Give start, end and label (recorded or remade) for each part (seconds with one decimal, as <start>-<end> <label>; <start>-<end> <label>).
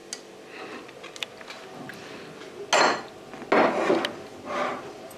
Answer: 0.0-4.3 recorded; 4.3-5.2 remade